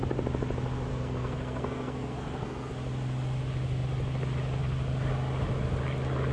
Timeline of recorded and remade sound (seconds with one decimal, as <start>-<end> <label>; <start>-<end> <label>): 0.0-0.9 recorded; 0.9-2.7 remade; 2.7-6.3 recorded